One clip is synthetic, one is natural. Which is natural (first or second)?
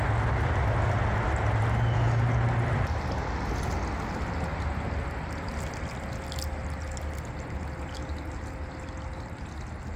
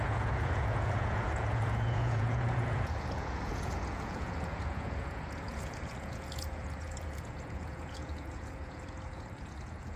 first